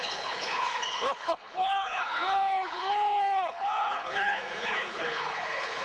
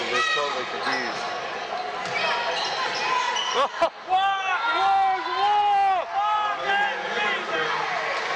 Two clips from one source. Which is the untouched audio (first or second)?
second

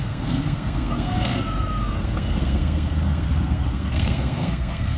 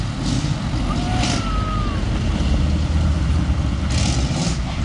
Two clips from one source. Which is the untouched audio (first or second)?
second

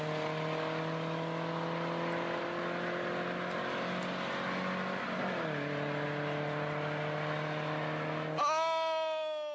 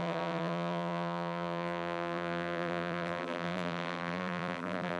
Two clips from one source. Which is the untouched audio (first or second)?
first